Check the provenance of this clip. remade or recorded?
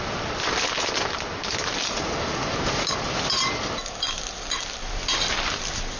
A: recorded